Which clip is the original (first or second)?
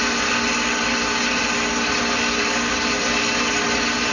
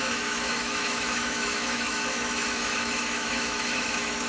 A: first